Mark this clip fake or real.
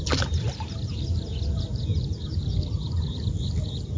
real